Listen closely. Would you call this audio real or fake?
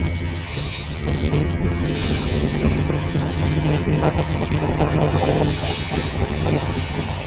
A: fake